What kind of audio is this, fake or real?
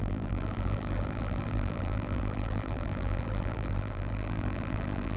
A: fake